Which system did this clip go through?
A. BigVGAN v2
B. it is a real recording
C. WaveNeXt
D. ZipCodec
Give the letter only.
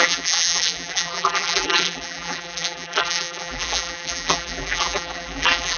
A